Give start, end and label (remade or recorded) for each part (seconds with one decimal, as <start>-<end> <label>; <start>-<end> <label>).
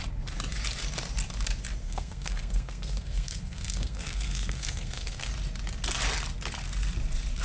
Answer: 0.0-1.8 recorded; 1.8-5.3 remade; 5.3-7.4 recorded